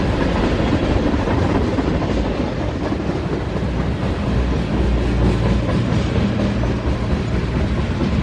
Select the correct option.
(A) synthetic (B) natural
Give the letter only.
B